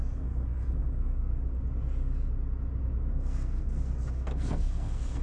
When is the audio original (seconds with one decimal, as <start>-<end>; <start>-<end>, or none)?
1.4-3.1